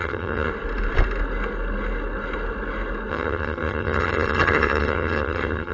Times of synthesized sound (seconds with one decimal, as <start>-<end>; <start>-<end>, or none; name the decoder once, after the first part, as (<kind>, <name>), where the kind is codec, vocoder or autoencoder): 0.0-0.5 (vocoder, HiFi-GAN); 3.1-5.7